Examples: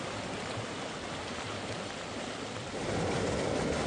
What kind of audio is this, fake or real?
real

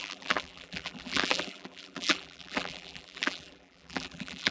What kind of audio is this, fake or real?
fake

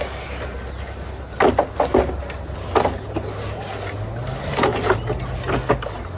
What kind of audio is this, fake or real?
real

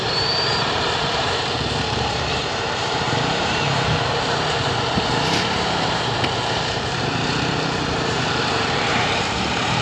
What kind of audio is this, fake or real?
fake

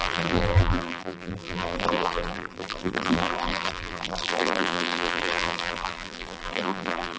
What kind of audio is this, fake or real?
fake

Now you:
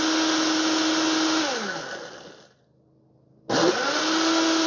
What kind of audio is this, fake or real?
real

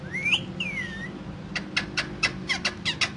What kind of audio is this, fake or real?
real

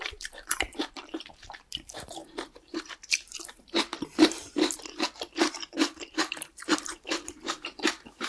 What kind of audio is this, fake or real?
fake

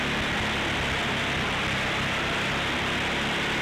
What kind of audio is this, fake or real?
real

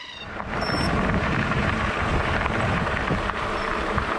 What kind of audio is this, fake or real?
fake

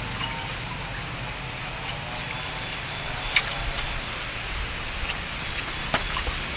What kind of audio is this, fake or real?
real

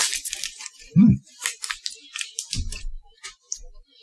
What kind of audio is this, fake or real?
fake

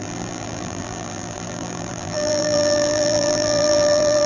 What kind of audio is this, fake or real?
fake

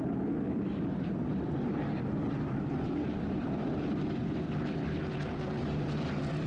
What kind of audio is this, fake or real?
fake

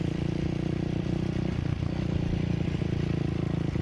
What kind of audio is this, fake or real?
real